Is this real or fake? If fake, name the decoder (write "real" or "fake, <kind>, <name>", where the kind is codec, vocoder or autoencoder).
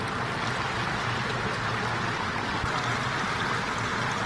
real